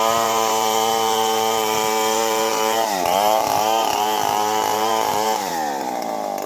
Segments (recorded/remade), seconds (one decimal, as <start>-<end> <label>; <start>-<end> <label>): 0.0-5.5 remade; 5.5-6.5 recorded